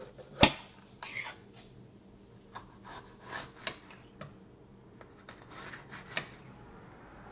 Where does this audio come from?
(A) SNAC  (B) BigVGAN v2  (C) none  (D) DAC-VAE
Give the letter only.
C